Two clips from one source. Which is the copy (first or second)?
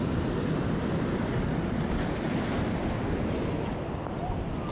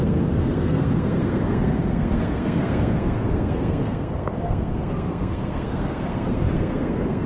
second